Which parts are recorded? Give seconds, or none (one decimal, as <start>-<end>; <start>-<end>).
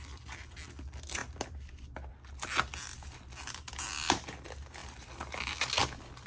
0.0-6.3